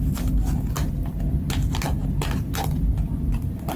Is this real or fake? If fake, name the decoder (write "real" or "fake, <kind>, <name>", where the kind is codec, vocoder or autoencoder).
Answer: real